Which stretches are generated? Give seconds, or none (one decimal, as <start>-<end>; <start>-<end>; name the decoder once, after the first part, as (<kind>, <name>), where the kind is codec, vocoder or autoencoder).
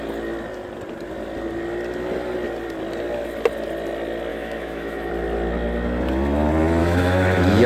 4.3-5.1 (autoencoder, DAC-VAE); 6.8-7.7